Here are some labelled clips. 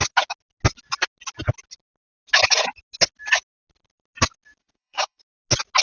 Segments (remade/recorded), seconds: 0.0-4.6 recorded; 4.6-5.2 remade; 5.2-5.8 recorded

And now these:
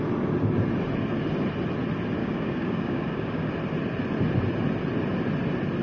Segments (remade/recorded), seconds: 0.0-2.2 recorded; 2.2-3.5 remade; 3.5-5.8 recorded

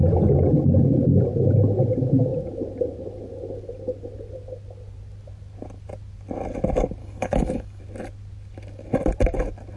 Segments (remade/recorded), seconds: 0.0-7.0 recorded; 7.0-7.8 remade; 7.8-9.8 recorded

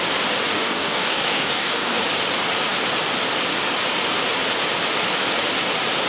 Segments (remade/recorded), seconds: 0.0-0.5 recorded; 0.5-2.0 remade; 2.0-6.1 recorded